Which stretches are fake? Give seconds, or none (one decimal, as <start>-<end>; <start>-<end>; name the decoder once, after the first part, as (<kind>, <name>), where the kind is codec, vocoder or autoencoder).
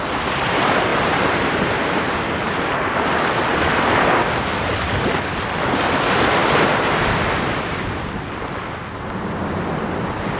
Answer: none